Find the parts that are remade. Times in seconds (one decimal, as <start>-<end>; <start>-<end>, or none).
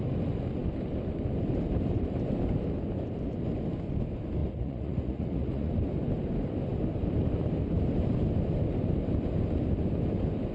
4.4-5.7